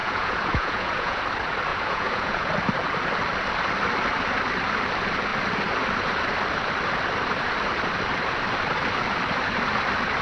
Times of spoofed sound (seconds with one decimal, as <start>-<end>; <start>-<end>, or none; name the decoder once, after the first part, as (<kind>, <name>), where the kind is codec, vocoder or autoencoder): 0.0-1.2 (vocoder, Vocos); 1.7-2.5